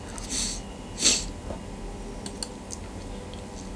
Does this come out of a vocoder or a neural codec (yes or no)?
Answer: no